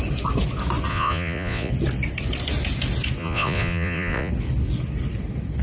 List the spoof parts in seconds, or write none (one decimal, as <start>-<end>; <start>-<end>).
0.9-1.7; 3.2-4.3